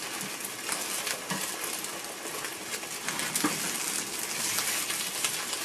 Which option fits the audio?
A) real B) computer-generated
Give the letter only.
A